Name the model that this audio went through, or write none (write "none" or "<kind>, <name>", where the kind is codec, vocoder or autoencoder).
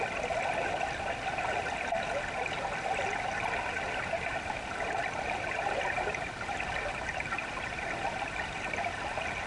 none